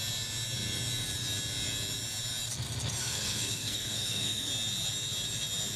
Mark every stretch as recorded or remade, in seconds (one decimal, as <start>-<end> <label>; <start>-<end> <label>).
0.0-3.0 recorded; 3.0-4.5 remade; 4.5-5.8 recorded